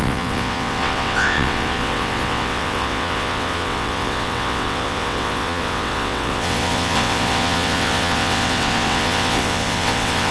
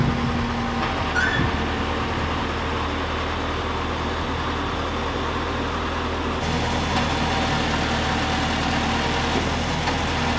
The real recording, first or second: second